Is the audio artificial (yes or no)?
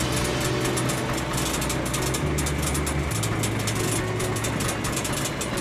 no